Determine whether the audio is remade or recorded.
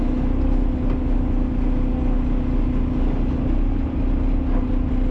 recorded